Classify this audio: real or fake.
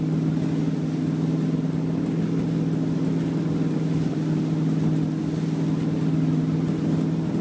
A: real